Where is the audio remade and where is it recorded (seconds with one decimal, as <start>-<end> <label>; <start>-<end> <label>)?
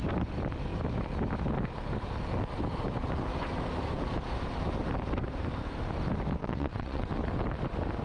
0.0-6.4 recorded; 6.4-7.1 remade; 7.1-8.0 recorded